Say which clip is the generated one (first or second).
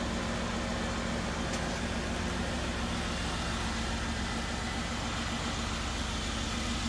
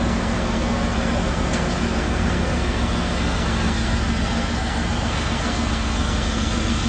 second